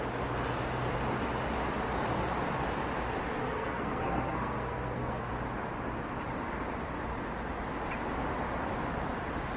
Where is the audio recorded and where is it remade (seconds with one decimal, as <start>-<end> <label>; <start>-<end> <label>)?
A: 0.0-3.4 recorded; 3.4-5.3 remade; 5.3-9.6 recorded